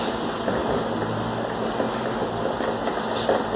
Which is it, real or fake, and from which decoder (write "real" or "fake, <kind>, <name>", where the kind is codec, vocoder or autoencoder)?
real